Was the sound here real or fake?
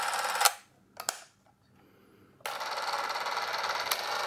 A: real